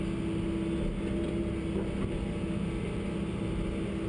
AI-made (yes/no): no